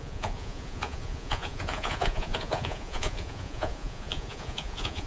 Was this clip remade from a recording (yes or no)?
yes